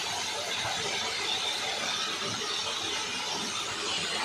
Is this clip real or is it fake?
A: real